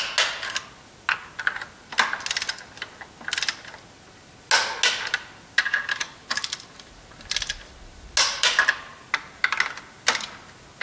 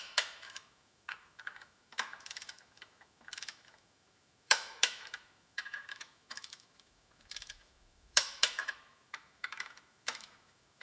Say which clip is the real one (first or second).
first